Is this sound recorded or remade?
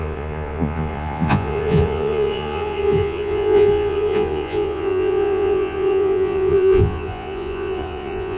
remade